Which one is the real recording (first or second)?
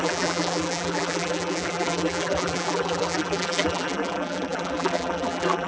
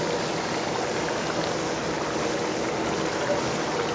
second